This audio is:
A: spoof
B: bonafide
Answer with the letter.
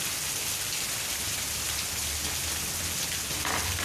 B